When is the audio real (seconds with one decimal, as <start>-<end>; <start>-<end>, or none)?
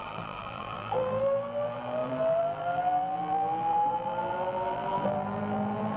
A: none